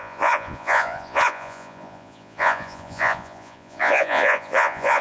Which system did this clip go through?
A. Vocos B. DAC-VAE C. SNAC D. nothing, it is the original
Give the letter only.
A